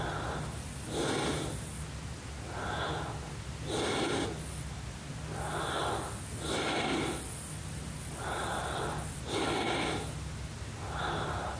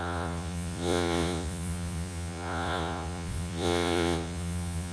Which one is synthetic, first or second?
second